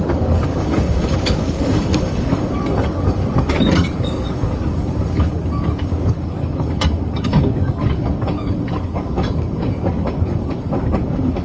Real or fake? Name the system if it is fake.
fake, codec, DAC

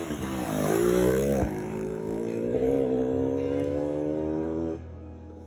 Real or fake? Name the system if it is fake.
fake, codec, DAC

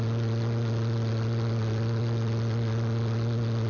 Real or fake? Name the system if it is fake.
real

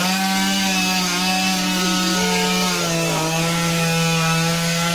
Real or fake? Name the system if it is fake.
fake, codec, DAC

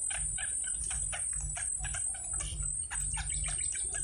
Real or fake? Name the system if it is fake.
real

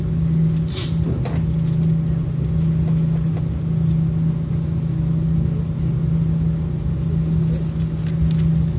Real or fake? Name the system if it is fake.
real